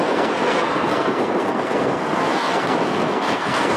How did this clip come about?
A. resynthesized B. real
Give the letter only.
A